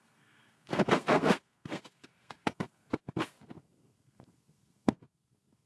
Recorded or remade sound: remade